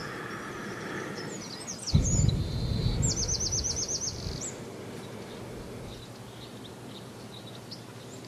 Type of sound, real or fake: real